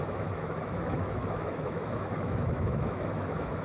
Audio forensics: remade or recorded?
remade